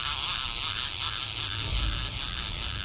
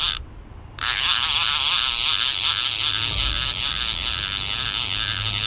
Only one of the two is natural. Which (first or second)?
second